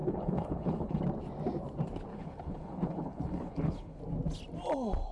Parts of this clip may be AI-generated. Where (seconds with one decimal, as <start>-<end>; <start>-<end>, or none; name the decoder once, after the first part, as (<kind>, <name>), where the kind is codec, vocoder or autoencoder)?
0.0-1.0 (codec, HILCodec); 2.1-4.0